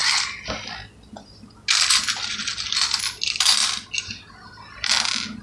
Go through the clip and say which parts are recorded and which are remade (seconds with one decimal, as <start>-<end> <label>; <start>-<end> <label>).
0.0-5.4 recorded